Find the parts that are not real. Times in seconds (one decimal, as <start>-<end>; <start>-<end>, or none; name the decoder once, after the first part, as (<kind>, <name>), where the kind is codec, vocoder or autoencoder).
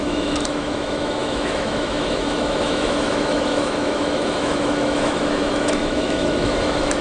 0.0-7.0 (autoencoder, DAC-VAE)